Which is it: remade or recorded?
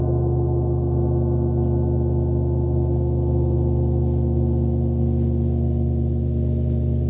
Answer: recorded